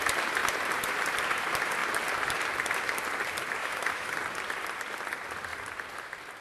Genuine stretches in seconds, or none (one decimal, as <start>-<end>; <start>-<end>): 0.0-3.6; 4.1-6.4